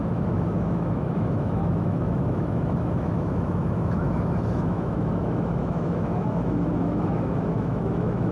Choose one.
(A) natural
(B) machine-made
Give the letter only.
B